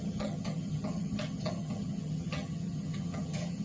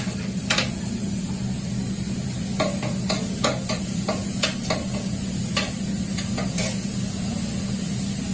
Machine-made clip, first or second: first